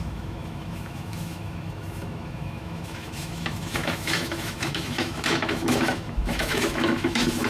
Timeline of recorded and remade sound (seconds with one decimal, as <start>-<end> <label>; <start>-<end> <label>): 0.0-7.5 remade